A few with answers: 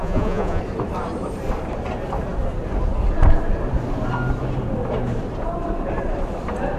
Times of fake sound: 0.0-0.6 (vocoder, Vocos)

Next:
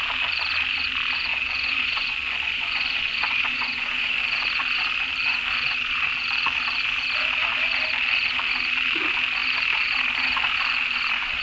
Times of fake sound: 1.3-4.2 (vocoder, Vocos)

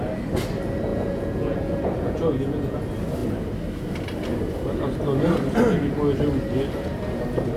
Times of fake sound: 0.9-2.8 (vocoder, Vocos)